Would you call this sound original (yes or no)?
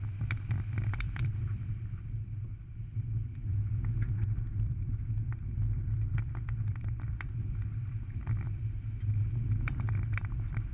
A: no